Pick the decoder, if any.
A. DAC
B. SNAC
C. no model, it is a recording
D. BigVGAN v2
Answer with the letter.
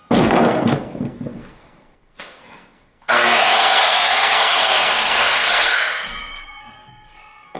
B